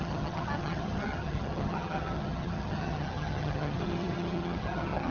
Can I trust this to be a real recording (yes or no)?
no